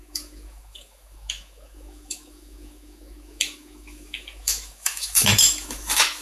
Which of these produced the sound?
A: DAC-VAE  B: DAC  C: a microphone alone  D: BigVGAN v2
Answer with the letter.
A